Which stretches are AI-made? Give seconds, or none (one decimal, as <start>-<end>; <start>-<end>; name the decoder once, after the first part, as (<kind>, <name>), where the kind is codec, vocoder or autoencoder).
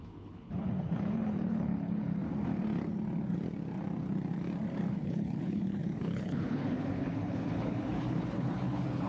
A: 0.0-2.2 (codec, HILCodec); 4.9-9.1